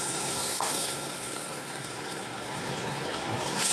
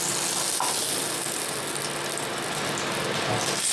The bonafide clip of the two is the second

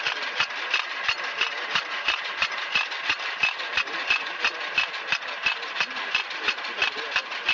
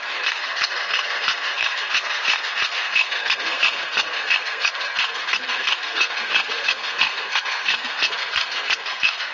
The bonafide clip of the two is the first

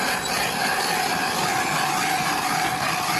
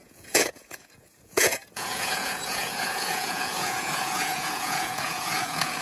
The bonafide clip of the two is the first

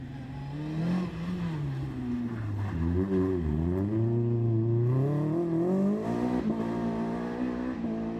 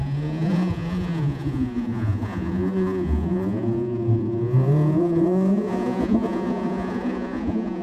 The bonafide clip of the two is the first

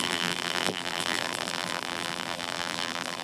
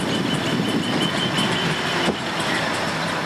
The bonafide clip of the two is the second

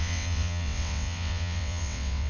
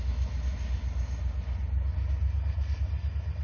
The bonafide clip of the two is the second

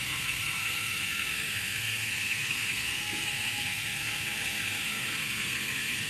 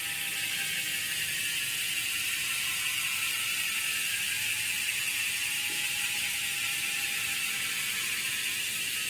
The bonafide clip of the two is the second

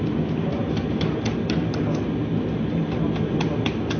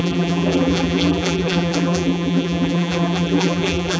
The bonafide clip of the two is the first